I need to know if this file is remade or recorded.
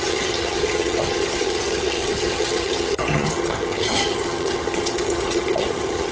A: remade